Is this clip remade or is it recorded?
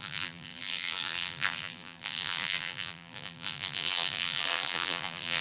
remade